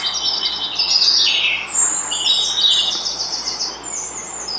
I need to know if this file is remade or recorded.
recorded